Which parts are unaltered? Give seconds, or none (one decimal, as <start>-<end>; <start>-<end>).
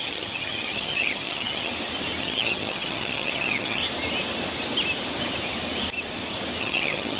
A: 1.7-2.2; 3.8-6.6